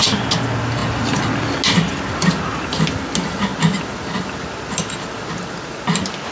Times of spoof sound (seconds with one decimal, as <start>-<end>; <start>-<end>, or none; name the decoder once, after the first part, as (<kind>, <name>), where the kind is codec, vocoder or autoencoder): none